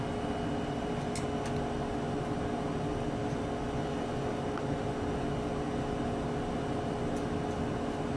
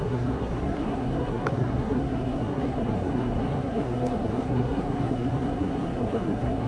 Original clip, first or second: first